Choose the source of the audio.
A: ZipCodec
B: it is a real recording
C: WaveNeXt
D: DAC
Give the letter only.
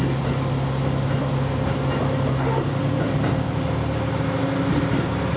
B